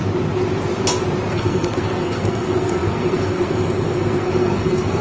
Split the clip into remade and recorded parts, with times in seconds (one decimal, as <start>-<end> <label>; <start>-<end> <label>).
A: 0.0-1.3 recorded; 1.3-5.0 remade